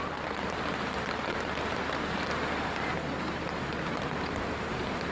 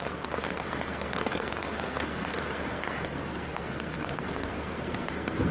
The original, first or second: first